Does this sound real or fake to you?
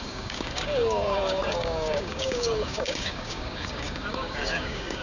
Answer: fake